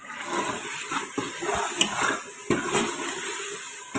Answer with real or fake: real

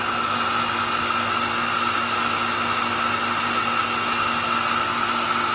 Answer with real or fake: real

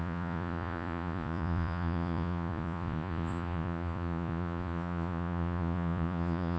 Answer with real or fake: fake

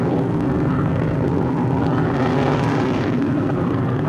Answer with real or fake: fake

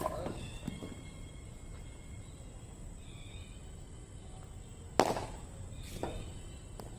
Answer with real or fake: real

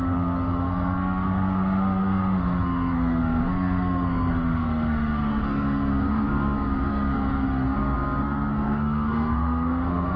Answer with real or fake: fake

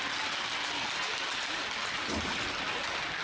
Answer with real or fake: real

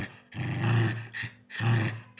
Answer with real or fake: real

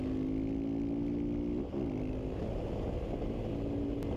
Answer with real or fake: real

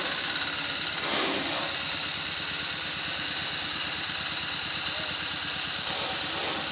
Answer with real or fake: fake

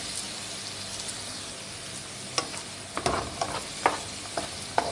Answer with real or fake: real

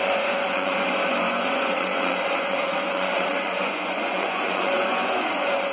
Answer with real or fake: fake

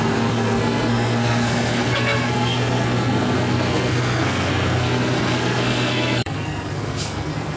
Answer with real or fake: fake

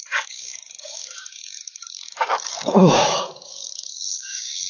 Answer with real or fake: fake